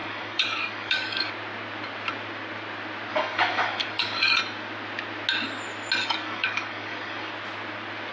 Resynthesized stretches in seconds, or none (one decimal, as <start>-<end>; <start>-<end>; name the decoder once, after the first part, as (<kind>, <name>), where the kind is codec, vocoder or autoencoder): 0.0-1.3 (codec, DAC); 3.1-4.2; 6.0-7.3